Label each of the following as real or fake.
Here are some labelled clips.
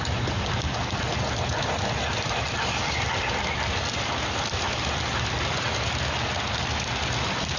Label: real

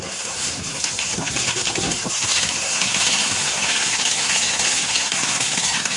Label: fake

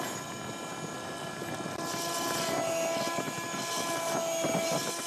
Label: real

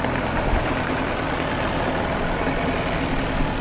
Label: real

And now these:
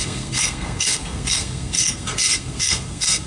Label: fake